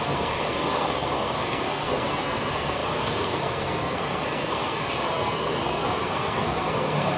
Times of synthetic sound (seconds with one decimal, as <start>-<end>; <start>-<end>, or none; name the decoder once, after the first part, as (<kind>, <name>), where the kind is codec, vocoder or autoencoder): 0.0-7.2 (codec, SNAC)